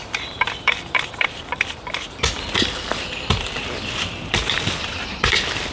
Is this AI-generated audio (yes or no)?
yes